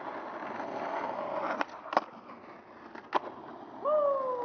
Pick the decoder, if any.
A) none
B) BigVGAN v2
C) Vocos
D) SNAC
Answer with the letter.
A